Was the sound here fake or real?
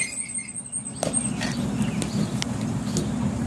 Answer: real